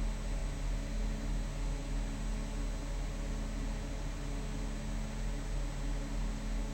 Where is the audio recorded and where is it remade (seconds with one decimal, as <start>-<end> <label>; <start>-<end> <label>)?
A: 0.0-6.7 recorded